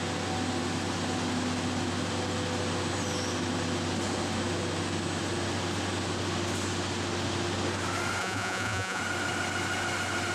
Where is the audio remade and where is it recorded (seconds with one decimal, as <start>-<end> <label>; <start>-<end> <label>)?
0.0-8.2 recorded; 8.2-9.0 remade; 9.0-10.3 recorded